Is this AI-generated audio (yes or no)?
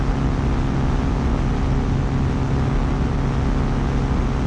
no